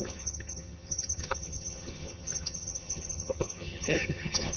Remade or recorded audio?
remade